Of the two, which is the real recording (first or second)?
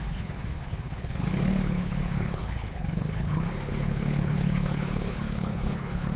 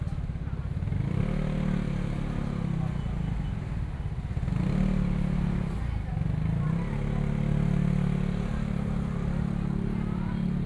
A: second